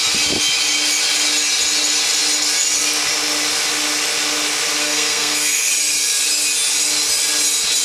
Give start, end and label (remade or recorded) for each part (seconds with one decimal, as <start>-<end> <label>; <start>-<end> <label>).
0.0-4.8 recorded; 4.8-5.7 remade; 5.7-7.8 recorded